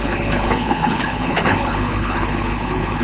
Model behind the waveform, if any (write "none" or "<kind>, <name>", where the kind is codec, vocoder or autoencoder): codec, HILCodec